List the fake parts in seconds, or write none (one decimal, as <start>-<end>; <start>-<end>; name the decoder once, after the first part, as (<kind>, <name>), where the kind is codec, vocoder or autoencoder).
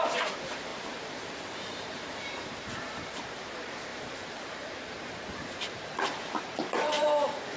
0.0-7.6 (vocoder, BigVGAN v2)